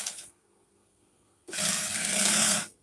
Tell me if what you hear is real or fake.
fake